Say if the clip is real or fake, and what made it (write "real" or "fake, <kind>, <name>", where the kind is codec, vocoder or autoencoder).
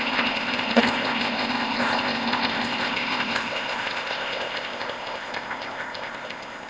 fake, codec, ZipCodec